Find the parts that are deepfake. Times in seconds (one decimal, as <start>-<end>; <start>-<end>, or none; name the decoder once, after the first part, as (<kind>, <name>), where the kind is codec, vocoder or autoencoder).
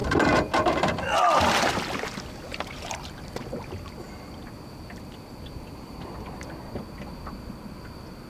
2.5-3.3 (vocoder, BigVGAN v2)